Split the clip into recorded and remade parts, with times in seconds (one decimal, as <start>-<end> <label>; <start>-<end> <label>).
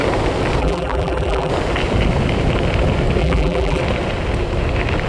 0.0-0.6 recorded; 0.6-1.5 remade; 1.5-3.2 recorded; 3.2-3.8 remade; 3.8-5.1 recorded